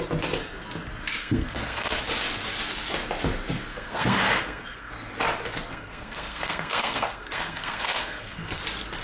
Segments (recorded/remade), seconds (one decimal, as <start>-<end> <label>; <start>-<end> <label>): 0.0-1.2 recorded; 1.2-2.0 remade; 2.0-3.7 recorded; 3.7-4.9 remade; 4.9-5.7 recorded; 5.7-8.6 remade; 8.6-9.0 recorded